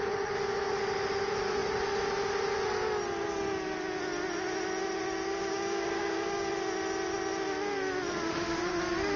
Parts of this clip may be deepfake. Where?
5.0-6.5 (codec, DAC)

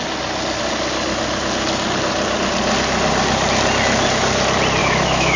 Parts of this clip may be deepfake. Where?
4.8-5.4 (autoencoder, DAC-VAE)